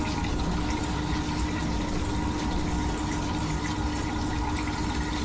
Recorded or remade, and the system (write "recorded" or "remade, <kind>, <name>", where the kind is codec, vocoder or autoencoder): recorded